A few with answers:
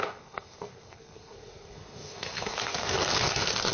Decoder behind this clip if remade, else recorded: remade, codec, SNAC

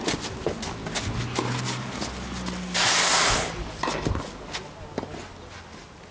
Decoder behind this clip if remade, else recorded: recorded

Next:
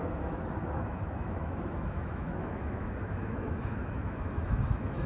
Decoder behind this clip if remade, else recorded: remade, autoencoder, DAC-VAE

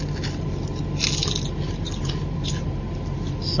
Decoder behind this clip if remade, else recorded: recorded